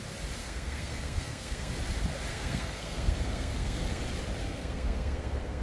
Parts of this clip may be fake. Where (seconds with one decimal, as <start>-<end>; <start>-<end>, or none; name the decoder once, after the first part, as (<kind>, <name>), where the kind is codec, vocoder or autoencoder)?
0.4-1.7 (codec, SNAC); 2.3-4.0; 4.4-5.6